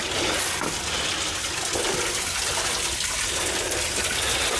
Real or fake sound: real